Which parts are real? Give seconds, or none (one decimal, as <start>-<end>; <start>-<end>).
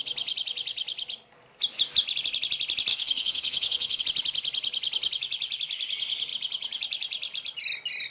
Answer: 0.0-2.9; 4.0-8.1